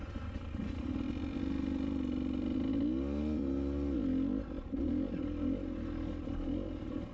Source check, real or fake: real